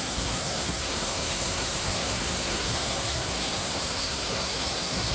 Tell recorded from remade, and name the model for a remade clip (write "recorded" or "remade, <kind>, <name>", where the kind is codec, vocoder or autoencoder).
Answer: remade, codec, SNAC